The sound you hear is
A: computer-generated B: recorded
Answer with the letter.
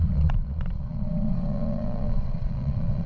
A